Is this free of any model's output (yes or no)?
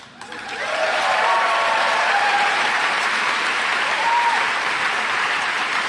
no